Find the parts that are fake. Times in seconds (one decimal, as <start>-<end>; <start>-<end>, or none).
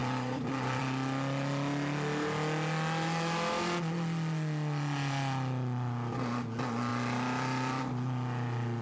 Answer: 0.0-0.8; 6.9-7.8